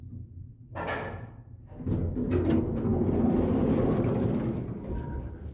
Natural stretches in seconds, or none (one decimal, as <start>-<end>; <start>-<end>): 0.0-5.5